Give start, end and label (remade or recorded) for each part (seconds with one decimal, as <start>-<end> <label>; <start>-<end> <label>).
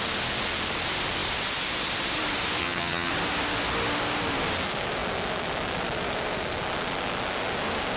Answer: 0.0-2.6 recorded; 2.6-3.1 remade; 3.1-8.0 recorded